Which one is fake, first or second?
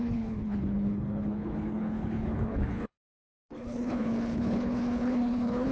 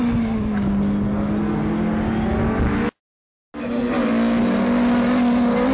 first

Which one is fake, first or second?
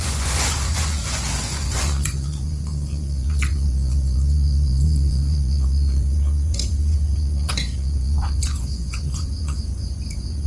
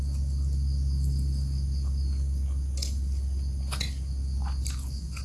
first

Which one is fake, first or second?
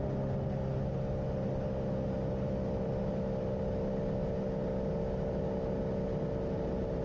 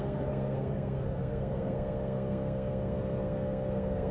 second